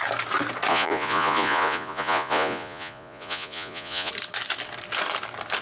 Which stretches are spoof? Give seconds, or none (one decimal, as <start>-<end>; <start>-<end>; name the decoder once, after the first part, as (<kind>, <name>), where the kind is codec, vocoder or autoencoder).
0.7-4.1 (vocoder, Vocos)